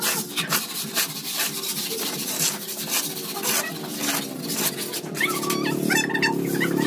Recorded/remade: recorded